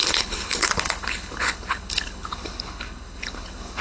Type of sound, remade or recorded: remade